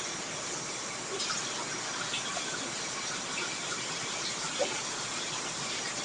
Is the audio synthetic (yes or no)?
no